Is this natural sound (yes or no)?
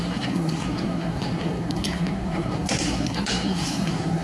no